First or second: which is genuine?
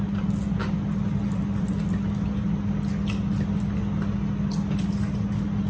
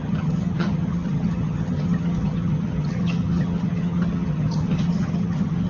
first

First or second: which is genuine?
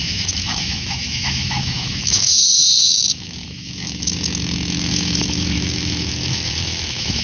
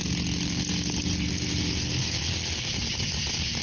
second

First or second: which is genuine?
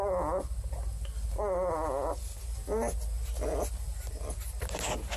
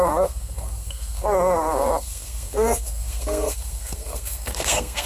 first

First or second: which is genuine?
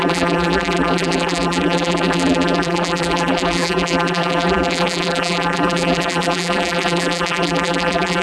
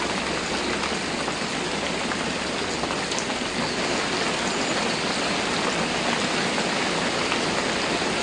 second